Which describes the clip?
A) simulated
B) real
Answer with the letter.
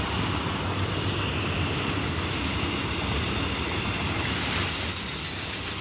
B